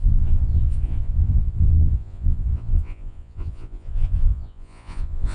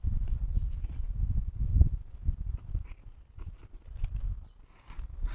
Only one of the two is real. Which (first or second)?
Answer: second